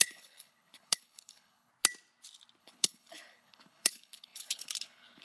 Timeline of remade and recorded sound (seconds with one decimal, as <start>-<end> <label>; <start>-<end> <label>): 0.0-1.7 remade; 1.7-2.6 recorded; 2.6-5.2 remade